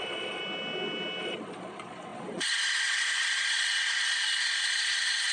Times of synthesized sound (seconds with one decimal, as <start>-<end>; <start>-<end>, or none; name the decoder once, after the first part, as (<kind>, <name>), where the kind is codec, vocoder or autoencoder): 0.0-0.4 (vocoder, Vocos); 1.2-5.3